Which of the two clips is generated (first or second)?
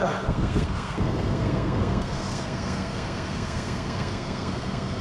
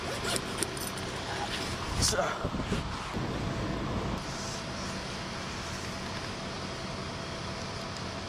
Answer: first